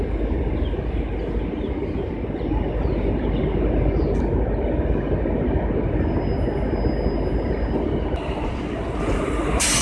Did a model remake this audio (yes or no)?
no